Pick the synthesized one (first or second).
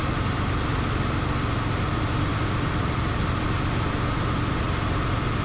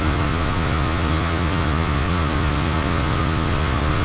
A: second